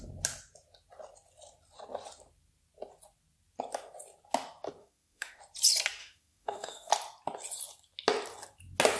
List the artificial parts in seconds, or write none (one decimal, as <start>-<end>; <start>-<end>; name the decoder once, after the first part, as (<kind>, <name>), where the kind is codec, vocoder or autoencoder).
4.8-5.4 (autoencoder, DAC-VAE); 6.0-6.9